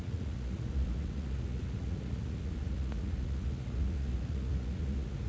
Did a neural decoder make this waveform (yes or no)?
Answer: yes